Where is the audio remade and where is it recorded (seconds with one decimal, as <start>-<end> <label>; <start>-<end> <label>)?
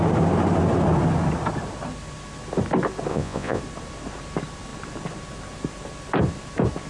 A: 0.0-3.1 recorded; 3.1-3.6 remade; 3.6-6.9 recorded